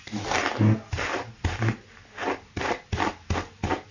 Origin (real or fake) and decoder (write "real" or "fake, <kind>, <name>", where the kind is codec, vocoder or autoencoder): real